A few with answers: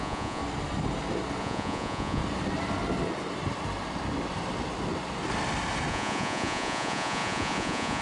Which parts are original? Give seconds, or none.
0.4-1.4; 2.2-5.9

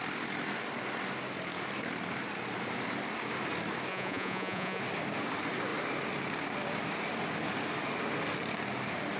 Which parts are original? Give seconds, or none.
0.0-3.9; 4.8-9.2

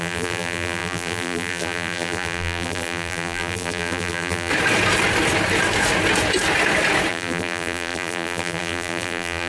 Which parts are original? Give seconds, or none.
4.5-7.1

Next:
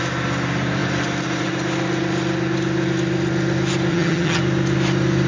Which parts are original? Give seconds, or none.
0.0-3.9; 4.4-5.3

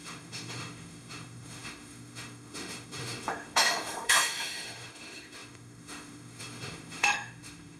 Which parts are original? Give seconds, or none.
none

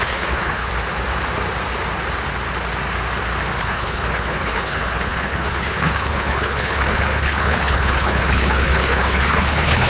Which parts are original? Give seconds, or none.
0.7-3.6